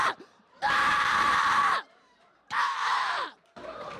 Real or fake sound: fake